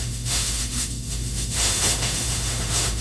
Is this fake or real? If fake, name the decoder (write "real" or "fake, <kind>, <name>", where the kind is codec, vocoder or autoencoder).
fake, autoencoder, DAC-VAE